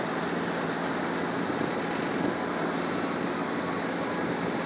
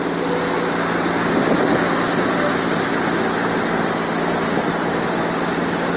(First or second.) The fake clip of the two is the first